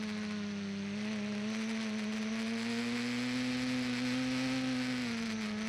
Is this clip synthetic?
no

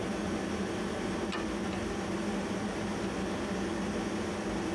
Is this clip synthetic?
no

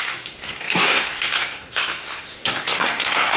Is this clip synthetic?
yes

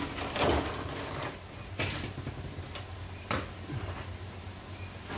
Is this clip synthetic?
no